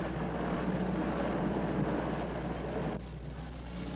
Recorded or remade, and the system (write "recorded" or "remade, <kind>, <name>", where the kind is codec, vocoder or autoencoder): recorded